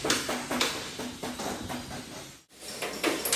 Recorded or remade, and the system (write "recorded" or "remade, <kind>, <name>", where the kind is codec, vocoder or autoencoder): recorded